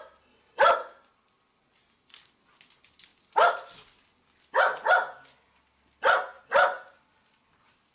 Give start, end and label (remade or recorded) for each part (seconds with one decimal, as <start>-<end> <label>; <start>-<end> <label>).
0.0-7.9 recorded